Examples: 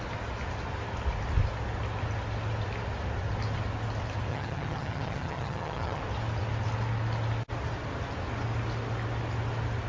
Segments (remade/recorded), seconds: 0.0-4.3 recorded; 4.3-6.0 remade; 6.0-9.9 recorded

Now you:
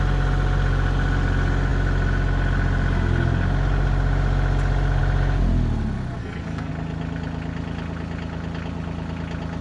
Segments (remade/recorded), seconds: 0.0-6.2 recorded; 6.2-6.7 remade; 6.7-9.6 recorded

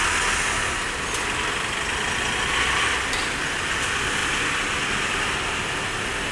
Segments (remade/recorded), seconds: 0.0-6.3 recorded

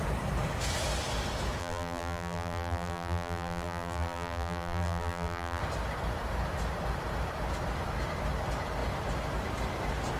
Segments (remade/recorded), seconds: 0.0-1.6 recorded; 1.6-5.6 remade; 5.6-10.2 recorded